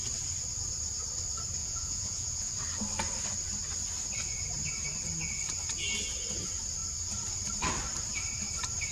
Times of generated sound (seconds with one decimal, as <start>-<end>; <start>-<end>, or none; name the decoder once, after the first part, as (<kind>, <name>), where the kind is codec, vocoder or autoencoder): 1.6-2.5 (vocoder, Vocos)